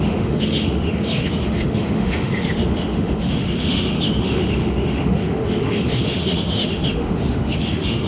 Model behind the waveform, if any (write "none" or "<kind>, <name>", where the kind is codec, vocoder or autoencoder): autoencoder, DAC-VAE